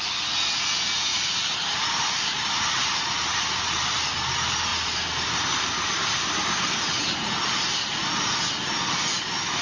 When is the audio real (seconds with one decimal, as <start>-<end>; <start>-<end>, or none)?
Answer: 0.0-1.1; 4.1-4.7; 7.0-9.6